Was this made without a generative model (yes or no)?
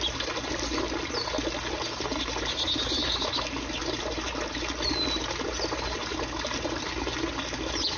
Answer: yes